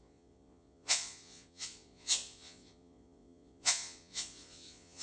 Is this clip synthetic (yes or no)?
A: yes